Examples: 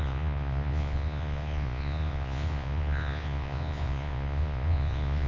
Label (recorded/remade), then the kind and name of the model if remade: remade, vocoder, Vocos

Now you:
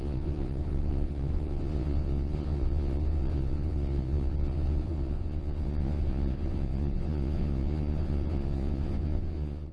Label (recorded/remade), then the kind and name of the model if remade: remade, vocoder, Vocos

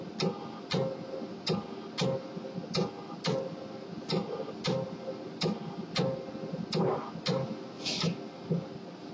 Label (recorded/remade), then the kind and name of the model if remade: recorded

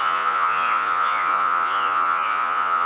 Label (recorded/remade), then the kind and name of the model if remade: remade, vocoder, Vocos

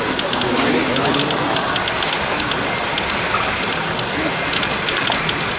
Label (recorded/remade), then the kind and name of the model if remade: recorded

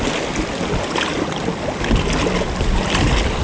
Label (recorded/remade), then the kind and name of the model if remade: recorded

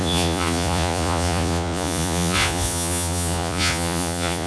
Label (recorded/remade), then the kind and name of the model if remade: remade, vocoder, Vocos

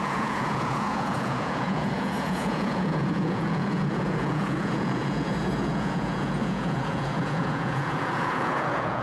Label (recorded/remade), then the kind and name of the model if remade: remade, vocoder, Vocos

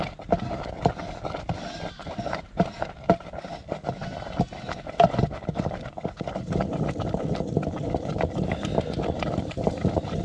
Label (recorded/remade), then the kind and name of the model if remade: recorded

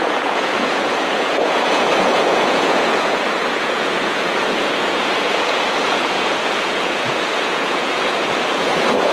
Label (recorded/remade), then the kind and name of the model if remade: remade, vocoder, Vocos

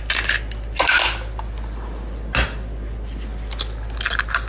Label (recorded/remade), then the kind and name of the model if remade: recorded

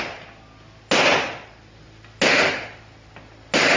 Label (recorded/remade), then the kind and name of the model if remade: recorded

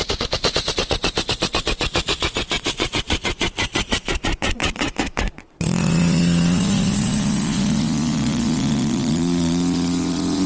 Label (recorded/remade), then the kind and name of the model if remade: remade, vocoder, Vocos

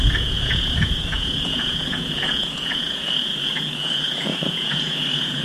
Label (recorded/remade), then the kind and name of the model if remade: remade, vocoder, Vocos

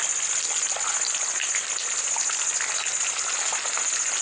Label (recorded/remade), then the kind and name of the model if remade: recorded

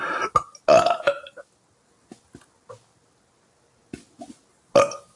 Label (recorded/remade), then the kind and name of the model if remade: recorded